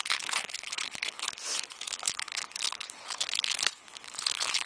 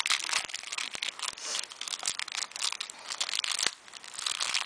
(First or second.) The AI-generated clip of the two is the first